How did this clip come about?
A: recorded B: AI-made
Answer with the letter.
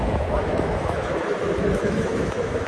B